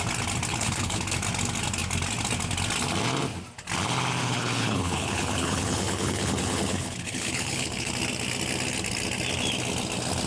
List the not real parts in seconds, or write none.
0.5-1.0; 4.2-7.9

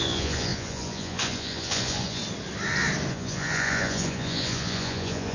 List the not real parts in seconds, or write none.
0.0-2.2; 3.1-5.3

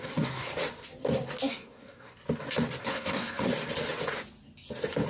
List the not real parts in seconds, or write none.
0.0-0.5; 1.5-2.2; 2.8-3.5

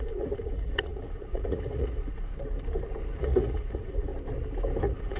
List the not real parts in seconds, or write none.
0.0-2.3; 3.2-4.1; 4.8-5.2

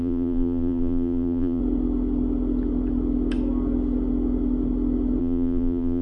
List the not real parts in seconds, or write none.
0.0-1.6; 5.2-6.0

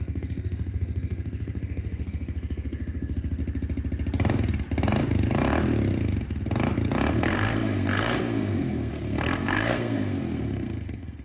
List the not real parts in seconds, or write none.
0.0-3.4; 7.1-11.2

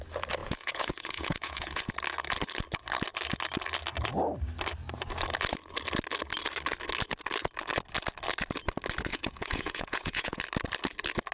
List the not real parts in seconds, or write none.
0.4-1.9; 9.1-10.4